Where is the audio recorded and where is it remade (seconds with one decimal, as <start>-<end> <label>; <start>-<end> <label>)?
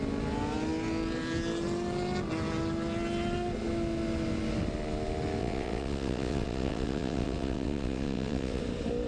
0.0-5.4 recorded; 5.4-8.6 remade; 8.6-9.1 recorded